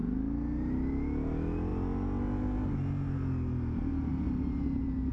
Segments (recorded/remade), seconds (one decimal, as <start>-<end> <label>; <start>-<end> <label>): 0.0-5.1 recorded